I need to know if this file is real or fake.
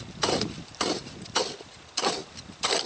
fake